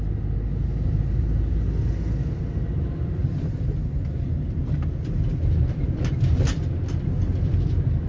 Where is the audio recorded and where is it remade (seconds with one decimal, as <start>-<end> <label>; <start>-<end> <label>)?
0.0-3.2 recorded; 3.2-5.4 remade; 5.4-8.1 recorded

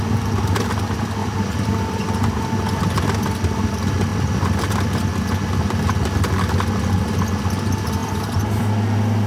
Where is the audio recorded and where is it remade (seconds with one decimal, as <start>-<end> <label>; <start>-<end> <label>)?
0.0-1.2 recorded; 1.2-3.0 remade; 3.0-4.1 recorded; 4.1-5.1 remade; 5.1-8.0 recorded; 8.0-8.6 remade; 8.6-9.3 recorded

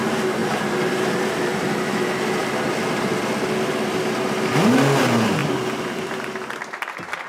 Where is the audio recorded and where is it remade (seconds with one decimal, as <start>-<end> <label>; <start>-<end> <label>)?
0.0-2.4 recorded; 2.4-4.0 remade; 4.0-5.4 recorded; 5.4-6.2 remade; 6.2-7.3 recorded

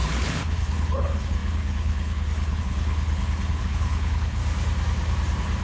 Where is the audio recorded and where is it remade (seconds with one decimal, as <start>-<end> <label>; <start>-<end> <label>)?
0.0-4.4 remade; 4.4-5.6 recorded

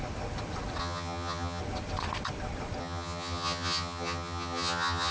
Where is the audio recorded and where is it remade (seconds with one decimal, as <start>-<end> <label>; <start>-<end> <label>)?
0.0-0.8 recorded; 0.8-1.6 remade; 1.6-2.8 recorded; 2.8-5.1 remade

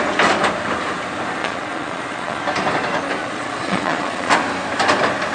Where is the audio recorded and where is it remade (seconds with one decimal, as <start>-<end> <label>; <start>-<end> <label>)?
0.0-1.4 recorded; 1.4-2.4 remade; 2.4-3.2 recorded; 3.2-4.3 remade; 4.3-5.3 recorded

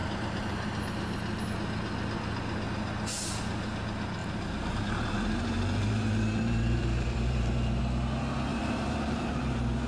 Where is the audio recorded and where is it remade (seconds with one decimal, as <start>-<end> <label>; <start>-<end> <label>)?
0.0-1.4 remade; 1.4-4.2 recorded; 4.2-7.8 remade; 7.8-8.5 recorded; 8.5-9.4 remade; 9.4-9.9 recorded